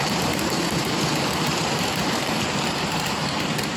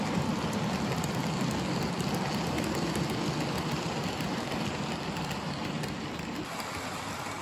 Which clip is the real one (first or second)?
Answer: second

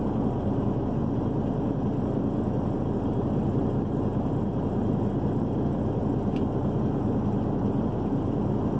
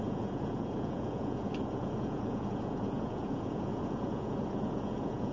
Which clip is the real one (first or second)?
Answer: first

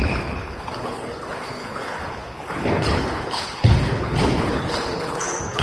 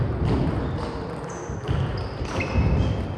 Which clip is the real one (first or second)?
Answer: second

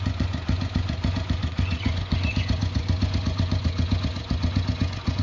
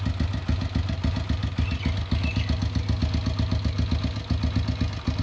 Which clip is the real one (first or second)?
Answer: second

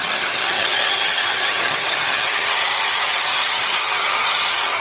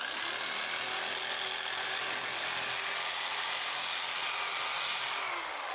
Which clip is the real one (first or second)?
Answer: second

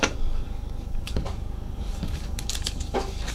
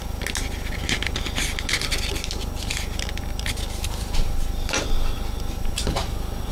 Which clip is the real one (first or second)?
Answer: second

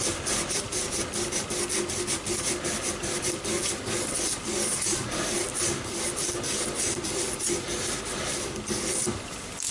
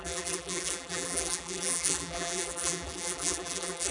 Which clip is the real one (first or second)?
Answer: first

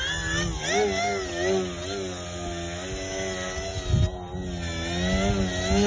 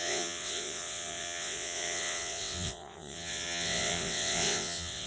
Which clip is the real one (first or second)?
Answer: first